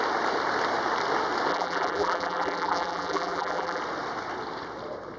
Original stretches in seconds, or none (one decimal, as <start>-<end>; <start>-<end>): 0.0-1.5; 3.8-5.2

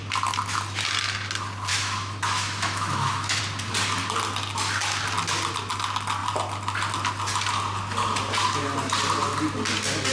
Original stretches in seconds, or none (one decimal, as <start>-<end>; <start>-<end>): 0.0-1.7; 3.4-10.1

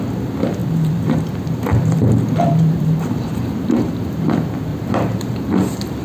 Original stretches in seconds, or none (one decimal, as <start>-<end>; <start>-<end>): 0.0-0.6; 4.0-4.7; 5.5-6.0

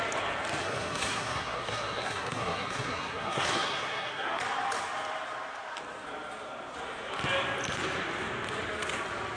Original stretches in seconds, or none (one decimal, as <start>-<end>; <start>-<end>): 0.0-0.6; 4.4-9.4

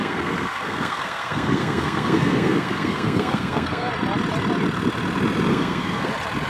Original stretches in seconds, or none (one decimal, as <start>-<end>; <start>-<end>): 3.9-5.5; 6.1-6.5

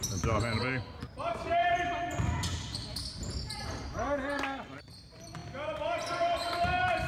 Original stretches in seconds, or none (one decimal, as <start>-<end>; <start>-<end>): 0.0-7.1

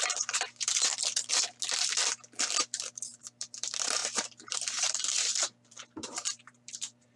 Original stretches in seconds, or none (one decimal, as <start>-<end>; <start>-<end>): 0.9-3.2; 4.0-4.8